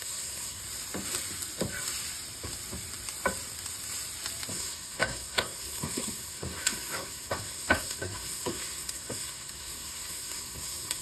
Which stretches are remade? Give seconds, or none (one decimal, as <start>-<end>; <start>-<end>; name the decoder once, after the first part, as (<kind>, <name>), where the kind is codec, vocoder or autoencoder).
0.0-0.6 (codec, SNAC); 4.5-11.0